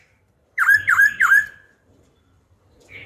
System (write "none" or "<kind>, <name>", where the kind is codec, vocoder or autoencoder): vocoder, BigVGAN v2